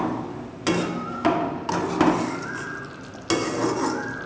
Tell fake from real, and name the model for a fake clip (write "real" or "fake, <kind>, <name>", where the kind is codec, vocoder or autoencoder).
real